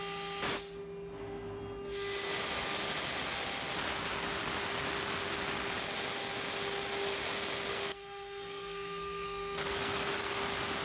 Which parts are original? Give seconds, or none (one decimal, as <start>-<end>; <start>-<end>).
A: 0.0-7.7; 10.4-10.8